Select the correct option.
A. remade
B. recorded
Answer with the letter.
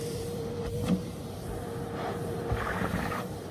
A